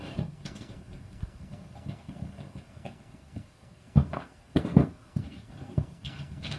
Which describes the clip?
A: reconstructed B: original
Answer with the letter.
A